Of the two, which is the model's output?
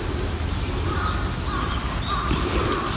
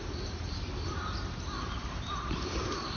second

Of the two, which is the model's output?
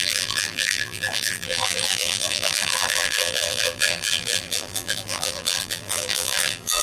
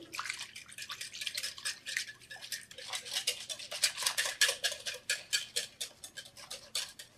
first